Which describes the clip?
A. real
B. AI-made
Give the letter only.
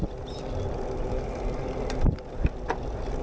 A